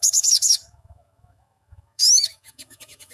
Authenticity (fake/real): fake